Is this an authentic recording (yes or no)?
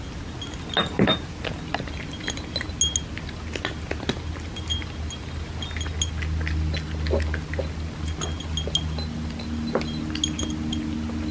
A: yes